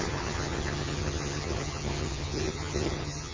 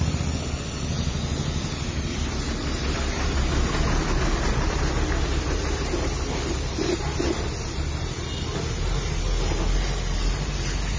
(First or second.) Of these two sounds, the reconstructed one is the first